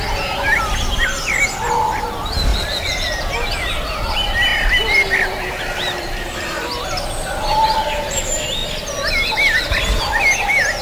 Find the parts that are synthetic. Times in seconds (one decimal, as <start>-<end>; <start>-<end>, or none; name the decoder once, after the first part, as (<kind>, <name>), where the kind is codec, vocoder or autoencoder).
2.5-3.2 (vocoder, BigVGAN v2); 4.5-6.8